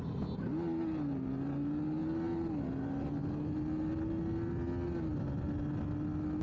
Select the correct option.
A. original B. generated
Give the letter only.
A